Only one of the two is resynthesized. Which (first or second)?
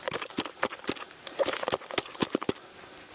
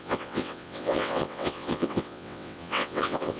second